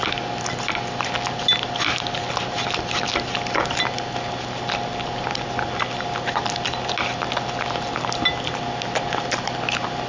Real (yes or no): yes